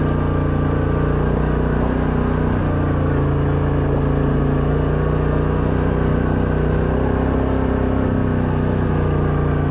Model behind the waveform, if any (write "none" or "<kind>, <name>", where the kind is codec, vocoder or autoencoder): none